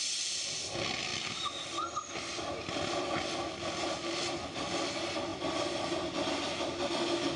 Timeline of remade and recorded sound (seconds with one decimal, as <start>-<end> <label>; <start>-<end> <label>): 0.0-7.4 recorded

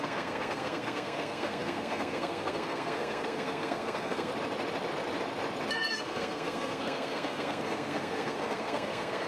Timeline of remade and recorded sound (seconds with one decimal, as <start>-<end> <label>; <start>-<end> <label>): 0.0-4.3 remade; 4.3-5.7 recorded; 5.7-9.3 remade

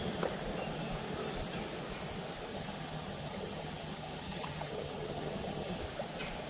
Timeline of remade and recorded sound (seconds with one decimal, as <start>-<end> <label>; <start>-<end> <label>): 0.0-2.5 recorded; 2.5-5.8 remade; 5.8-6.5 recorded

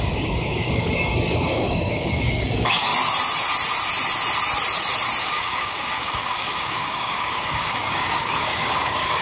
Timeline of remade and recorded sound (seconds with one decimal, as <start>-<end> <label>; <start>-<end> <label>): 0.0-2.9 remade; 2.9-5.2 recorded; 5.2-9.2 remade

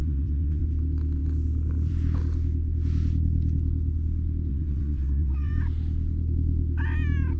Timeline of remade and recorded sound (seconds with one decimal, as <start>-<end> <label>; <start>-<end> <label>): 0.0-0.6 remade; 0.6-4.5 recorded; 4.5-5.5 remade; 5.5-7.4 recorded

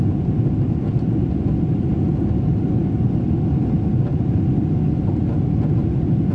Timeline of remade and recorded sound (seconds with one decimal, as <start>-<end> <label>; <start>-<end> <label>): 0.0-6.3 recorded